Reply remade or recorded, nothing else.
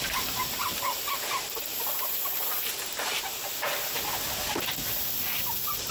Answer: remade